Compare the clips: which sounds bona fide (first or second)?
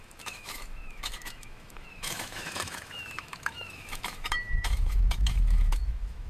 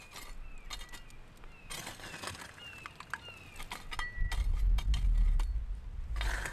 second